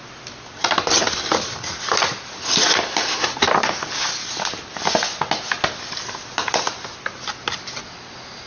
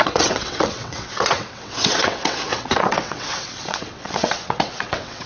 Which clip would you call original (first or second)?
first